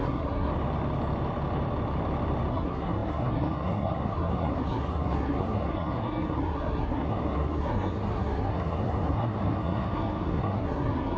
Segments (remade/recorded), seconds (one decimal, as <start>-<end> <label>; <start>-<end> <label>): 0.0-0.5 remade; 0.5-2.5 recorded; 2.5-11.2 remade